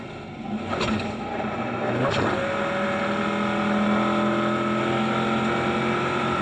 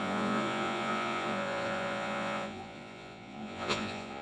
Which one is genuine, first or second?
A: first